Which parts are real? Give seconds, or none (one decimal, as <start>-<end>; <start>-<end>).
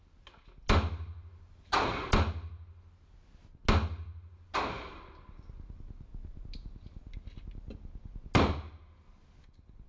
0.0-9.9